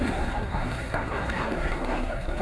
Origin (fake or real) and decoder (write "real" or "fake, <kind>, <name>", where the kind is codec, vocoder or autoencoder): fake, codec, SNAC